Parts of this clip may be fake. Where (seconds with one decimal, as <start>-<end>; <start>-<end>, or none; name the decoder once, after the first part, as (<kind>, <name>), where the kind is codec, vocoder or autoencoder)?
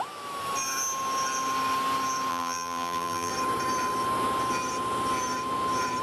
2.3-3.3 (vocoder, BigVGAN v2)